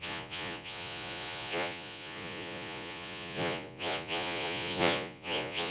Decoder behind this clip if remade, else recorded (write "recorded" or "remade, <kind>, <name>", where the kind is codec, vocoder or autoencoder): remade, vocoder, Vocos